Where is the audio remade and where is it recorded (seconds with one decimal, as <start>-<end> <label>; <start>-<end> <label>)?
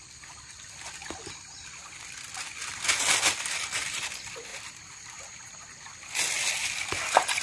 0.0-4.5 recorded; 4.5-5.3 remade; 5.3-7.4 recorded